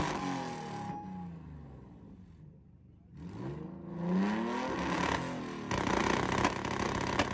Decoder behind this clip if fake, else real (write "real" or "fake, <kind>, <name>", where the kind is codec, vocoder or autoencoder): real